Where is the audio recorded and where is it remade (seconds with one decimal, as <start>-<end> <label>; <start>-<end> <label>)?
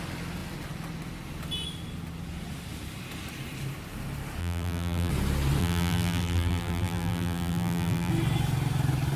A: 0.0-4.4 recorded; 4.4-5.1 remade; 5.1-5.6 recorded; 5.6-8.1 remade; 8.1-9.2 recorded